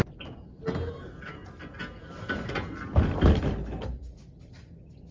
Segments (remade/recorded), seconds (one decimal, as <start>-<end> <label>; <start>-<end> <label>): 0.0-5.1 recorded